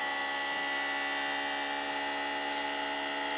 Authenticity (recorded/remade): recorded